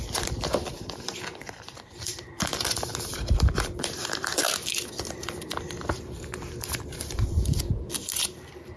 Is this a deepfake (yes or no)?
yes